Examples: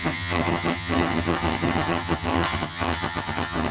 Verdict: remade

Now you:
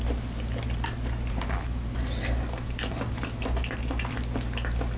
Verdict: recorded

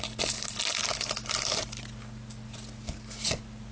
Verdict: recorded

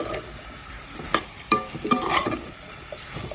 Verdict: recorded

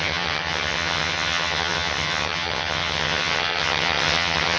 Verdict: remade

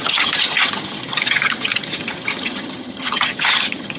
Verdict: remade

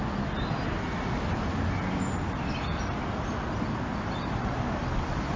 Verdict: recorded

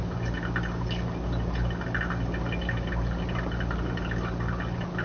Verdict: recorded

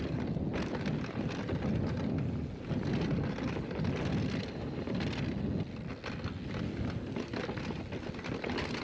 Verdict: recorded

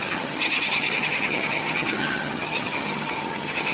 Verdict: remade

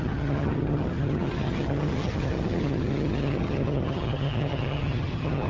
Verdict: remade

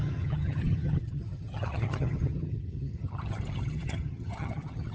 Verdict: remade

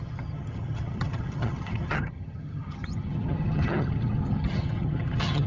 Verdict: remade